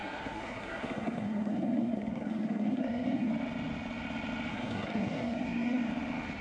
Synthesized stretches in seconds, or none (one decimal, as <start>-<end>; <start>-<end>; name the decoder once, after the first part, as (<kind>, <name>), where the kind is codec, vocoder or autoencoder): 0.0-3.3 (codec, SNAC); 4.5-5.9